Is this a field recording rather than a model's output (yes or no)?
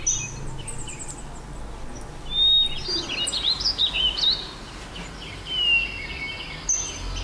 yes